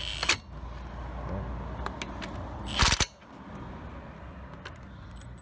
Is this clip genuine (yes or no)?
yes